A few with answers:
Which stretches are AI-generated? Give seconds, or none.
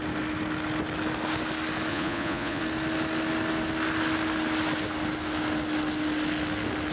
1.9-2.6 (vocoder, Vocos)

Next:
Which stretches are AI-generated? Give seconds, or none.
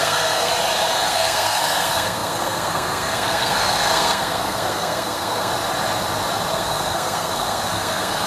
0.0-0.5 (codec, SNAC); 1.1-5.5; 6.5-8.3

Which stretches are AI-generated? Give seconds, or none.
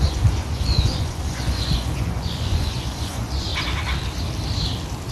0.0-3.5 (vocoder, Vocos)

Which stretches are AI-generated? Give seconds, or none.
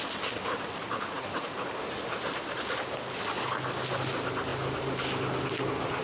0.8-1.7 (vocoder, Vocos)